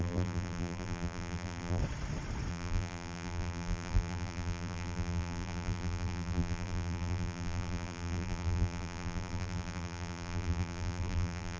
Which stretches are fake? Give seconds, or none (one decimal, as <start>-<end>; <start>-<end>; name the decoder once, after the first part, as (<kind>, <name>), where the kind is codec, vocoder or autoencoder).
0.0-1.8 (vocoder, BigVGAN v2); 2.5-11.6